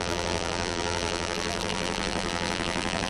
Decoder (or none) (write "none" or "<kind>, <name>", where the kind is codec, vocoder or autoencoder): vocoder, BigVGAN v2